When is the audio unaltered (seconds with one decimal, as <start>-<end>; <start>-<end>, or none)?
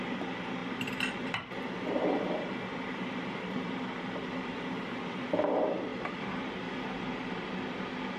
0.0-0.6; 5.5-5.9; 7.0-8.2